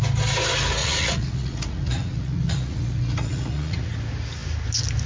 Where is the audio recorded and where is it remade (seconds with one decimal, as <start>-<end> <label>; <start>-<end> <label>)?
0.0-0.8 recorded; 0.8-3.9 remade; 3.9-5.1 recorded

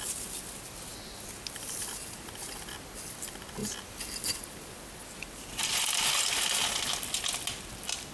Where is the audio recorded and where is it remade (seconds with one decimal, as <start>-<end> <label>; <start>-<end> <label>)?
0.0-8.1 recorded

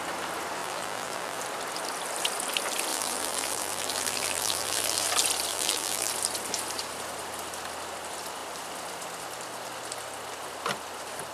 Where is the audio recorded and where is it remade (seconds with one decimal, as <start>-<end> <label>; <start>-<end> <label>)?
0.0-0.6 recorded; 0.6-1.4 remade; 1.4-2.9 recorded; 2.9-5.1 remade; 5.1-5.5 recorded; 5.5-6.1 remade; 6.1-11.3 recorded

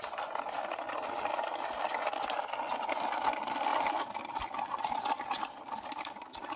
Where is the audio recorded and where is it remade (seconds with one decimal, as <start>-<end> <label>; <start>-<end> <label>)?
0.0-6.6 recorded

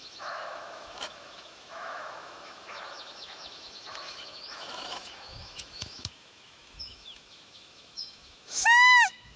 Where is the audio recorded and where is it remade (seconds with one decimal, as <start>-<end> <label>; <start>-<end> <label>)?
0.0-9.4 remade

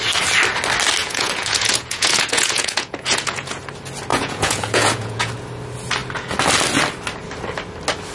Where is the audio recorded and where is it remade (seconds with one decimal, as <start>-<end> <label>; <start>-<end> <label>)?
0.0-1.0 recorded; 1.0-3.6 remade; 3.6-4.1 recorded; 4.1-5.3 remade; 5.3-8.1 recorded